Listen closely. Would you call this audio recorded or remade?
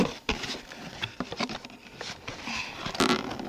recorded